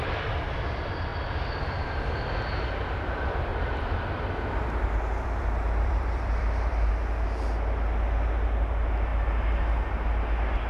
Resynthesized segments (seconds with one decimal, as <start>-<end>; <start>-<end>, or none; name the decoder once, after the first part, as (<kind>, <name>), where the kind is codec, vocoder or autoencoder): 3.5-6.9 (vocoder, BigVGAN v2)